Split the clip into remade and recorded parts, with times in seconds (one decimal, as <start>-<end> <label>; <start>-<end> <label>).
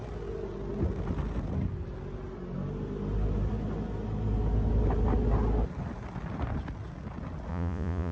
0.0-7.5 recorded; 7.5-8.1 remade